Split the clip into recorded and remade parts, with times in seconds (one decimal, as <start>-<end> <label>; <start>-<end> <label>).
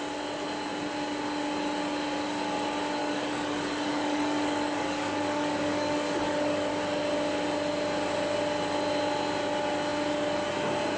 0.0-3.0 recorded; 3.0-6.7 remade; 6.7-11.0 recorded